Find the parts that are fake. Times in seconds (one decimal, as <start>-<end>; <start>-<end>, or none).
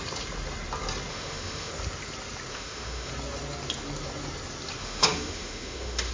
1.1-1.7; 2.5-3.1; 4.8-6.1